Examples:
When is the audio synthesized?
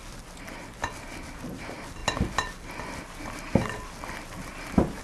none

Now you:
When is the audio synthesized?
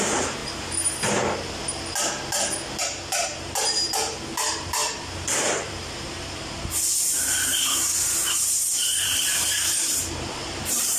0.0-0.4 (vocoder, BigVGAN v2); 2.8-11.0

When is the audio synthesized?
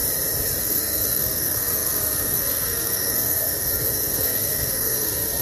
0.6-5.4 (codec, SNAC)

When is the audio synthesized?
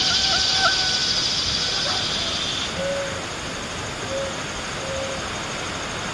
none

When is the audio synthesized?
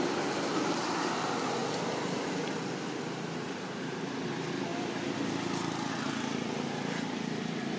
none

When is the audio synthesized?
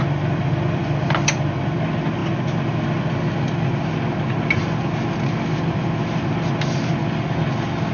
none